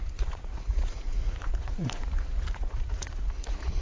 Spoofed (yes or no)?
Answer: yes